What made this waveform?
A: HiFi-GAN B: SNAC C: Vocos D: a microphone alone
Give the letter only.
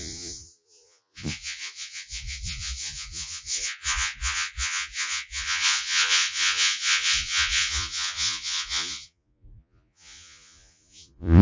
C